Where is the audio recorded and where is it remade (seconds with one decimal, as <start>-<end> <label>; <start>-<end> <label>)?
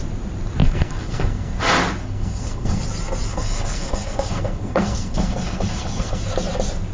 0.0-0.6 recorded; 0.6-1.6 remade; 1.6-2.0 recorded; 2.0-2.8 remade; 2.8-3.3 recorded; 3.3-6.3 remade; 6.3-6.9 recorded